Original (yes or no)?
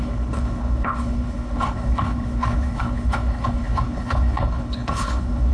no